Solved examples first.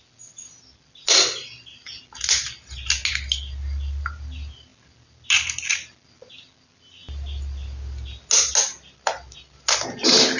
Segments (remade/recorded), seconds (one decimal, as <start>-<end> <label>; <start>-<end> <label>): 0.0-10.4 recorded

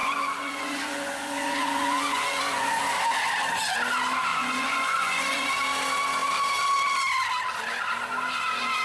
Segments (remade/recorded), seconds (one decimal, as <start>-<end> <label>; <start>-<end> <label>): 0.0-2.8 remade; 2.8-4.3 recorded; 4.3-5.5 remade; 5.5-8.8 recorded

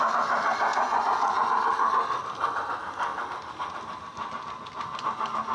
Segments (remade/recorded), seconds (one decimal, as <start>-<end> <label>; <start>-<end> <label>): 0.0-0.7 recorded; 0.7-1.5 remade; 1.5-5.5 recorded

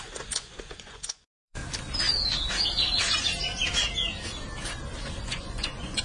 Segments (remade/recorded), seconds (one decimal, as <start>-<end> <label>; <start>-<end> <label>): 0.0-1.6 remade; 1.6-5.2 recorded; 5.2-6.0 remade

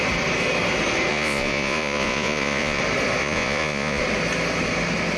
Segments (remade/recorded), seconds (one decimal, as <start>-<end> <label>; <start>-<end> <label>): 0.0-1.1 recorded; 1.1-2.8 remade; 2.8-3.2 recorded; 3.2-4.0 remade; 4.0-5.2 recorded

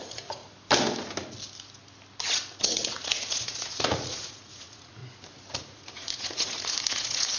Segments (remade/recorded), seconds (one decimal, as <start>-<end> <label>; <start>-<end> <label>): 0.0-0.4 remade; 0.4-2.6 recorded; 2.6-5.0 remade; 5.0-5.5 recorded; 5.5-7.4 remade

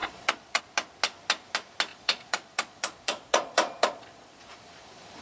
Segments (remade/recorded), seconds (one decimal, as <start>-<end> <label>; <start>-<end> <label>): 0.0-0.6 remade; 0.6-1.9 recorded; 1.9-5.2 remade